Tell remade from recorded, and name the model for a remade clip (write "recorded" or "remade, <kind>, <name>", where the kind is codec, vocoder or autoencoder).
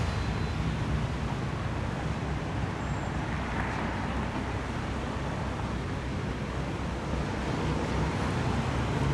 recorded